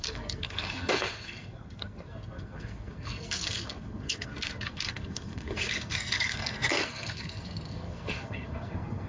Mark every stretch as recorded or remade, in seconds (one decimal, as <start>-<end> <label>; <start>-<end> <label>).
0.0-9.1 remade